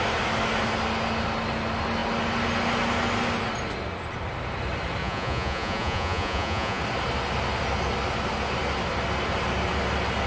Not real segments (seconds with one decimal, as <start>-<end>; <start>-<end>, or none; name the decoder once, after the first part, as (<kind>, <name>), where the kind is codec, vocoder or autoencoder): 5.0-6.8 (vocoder, Vocos)